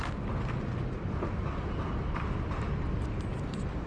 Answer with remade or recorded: recorded